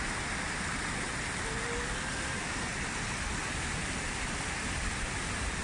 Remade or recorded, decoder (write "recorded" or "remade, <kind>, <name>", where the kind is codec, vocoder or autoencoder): recorded